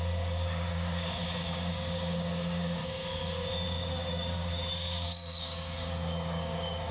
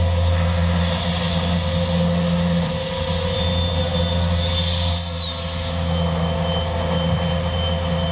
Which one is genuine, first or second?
second